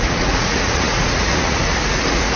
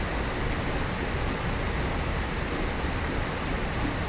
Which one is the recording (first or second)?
second